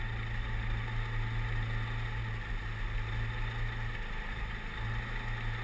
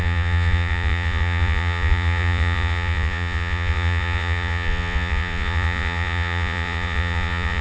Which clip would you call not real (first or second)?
second